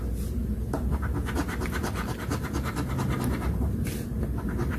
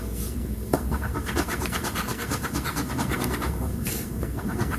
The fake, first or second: second